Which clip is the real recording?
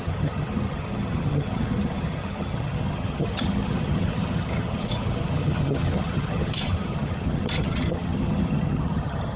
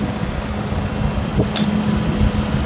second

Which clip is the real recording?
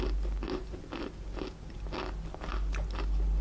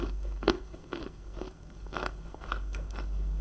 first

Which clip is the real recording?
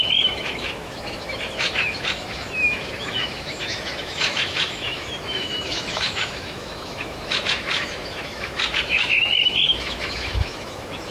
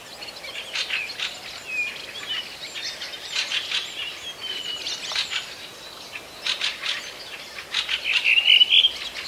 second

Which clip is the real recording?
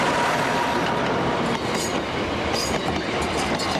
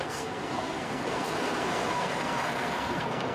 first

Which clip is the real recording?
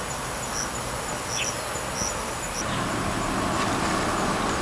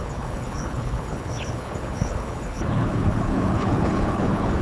first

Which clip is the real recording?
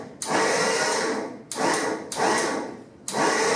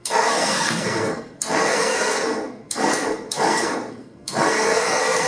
first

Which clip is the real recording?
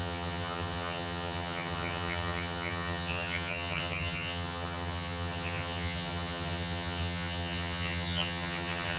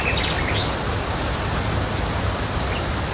second